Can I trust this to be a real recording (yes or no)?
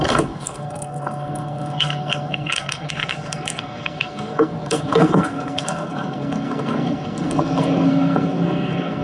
no